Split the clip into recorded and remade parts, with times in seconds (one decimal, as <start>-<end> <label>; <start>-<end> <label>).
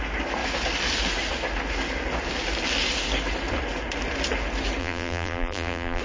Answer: 0.0-4.8 recorded; 4.8-6.0 remade